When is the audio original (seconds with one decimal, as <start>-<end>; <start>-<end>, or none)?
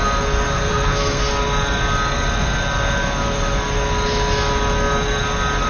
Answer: 0.0-0.5; 1.3-5.7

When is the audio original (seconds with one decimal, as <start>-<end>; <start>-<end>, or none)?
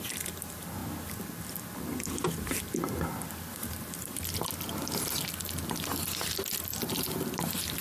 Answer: 0.0-3.5; 4.2-6.7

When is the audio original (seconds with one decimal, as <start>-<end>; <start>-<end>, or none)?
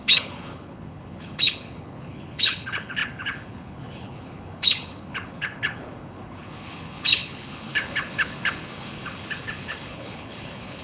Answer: none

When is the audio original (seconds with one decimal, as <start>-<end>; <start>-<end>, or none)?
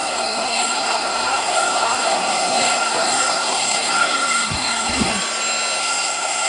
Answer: 5.1-5.8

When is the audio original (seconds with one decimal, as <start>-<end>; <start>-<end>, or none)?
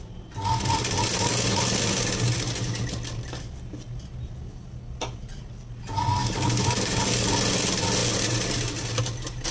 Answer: 0.0-6.2; 7.0-9.5